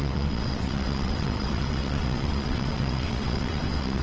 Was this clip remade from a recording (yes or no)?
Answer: yes